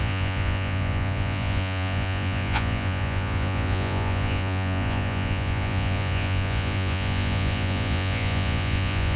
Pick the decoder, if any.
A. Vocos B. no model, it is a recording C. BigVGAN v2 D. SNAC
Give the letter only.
A